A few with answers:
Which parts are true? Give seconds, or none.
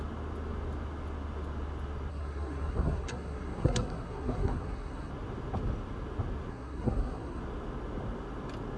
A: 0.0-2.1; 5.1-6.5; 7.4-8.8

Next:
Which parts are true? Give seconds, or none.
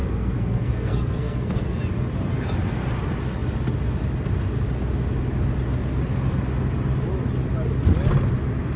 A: 1.8-8.8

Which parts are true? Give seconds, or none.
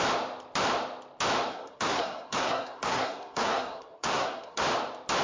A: 0.0-1.5; 4.6-5.2